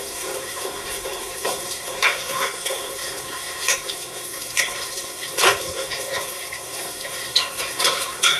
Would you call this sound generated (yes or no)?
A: yes